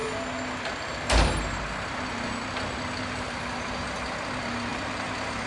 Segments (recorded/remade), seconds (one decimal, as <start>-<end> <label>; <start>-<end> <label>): 0.0-5.5 recorded